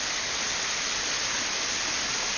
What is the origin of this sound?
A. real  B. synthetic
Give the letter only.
A